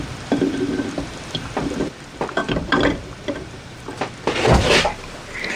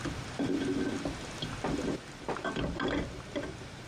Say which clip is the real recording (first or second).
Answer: second